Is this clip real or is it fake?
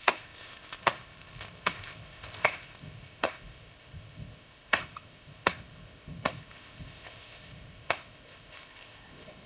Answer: fake